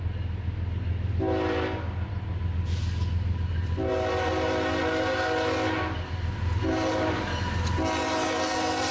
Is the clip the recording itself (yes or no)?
yes